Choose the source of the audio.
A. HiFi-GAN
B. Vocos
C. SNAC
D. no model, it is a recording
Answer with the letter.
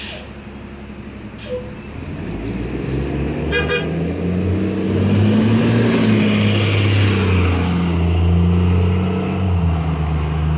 D